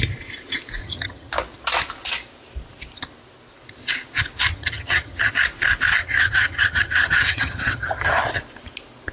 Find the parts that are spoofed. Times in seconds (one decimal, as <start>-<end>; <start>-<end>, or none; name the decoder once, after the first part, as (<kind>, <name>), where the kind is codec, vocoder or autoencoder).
0.8-1.3 (vocoder, HiFi-GAN); 4.5-5.3; 6.0-8.2

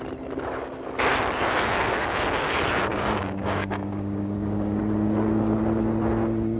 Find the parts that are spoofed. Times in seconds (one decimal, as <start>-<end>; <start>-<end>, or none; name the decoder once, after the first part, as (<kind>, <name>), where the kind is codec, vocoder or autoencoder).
2.9-4.8 (codec, DAC)

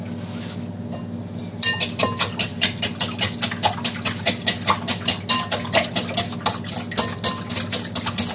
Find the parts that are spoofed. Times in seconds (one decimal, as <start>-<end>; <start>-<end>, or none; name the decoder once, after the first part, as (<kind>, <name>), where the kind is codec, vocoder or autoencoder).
2.5-3.0 (vocoder, BigVGAN v2)

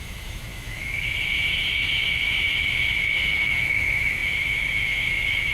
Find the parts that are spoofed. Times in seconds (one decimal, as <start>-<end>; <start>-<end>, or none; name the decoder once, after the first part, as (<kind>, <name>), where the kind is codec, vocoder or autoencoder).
0.0-5.5 (autoencoder, DAC-VAE)

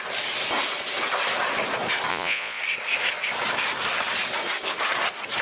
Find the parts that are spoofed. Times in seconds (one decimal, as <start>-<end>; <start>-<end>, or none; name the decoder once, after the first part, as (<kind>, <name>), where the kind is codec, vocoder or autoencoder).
2.1-2.6 (vocoder, Vocos)

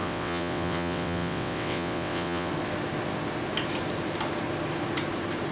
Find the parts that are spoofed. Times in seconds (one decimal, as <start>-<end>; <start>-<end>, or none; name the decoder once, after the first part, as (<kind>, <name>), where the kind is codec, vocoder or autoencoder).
0.0-2.5 (vocoder, WaveNeXt)

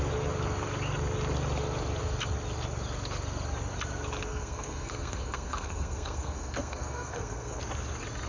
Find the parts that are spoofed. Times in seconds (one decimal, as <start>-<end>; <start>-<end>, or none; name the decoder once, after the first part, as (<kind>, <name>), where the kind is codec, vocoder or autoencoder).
4.3-7.6 (codec, SNAC)